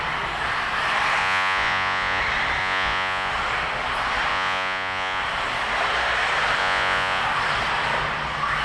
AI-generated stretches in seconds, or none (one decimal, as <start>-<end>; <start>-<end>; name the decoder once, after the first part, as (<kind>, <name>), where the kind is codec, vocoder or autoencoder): 1.2-2.2 (vocoder, Vocos); 2.6-3.3; 4.3-5.2; 6.6-7.2